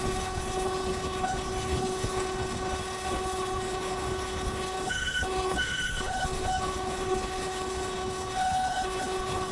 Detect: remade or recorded remade